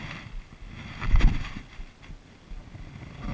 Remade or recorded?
recorded